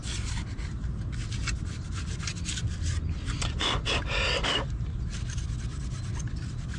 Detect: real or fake real